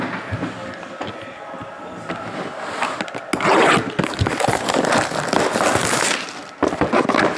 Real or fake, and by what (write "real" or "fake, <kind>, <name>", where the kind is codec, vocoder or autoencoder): real